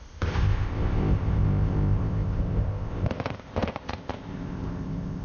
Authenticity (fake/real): fake